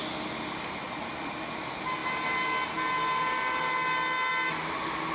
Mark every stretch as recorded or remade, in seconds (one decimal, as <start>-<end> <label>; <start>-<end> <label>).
0.0-0.8 recorded; 0.8-1.4 remade; 1.4-5.1 recorded